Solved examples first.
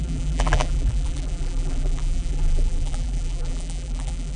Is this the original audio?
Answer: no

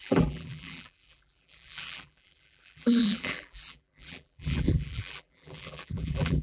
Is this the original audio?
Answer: no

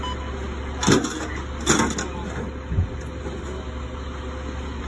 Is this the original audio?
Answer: yes